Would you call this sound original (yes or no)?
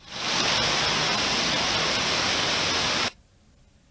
yes